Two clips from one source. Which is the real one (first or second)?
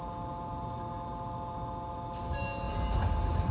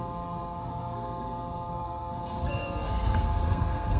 first